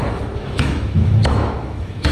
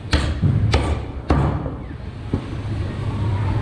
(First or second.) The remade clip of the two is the first